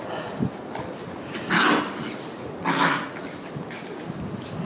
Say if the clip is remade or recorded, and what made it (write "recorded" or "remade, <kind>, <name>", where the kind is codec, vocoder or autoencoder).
recorded